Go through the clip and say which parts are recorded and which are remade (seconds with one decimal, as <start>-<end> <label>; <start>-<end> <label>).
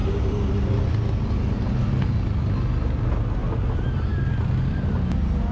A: 0.0-5.5 recorded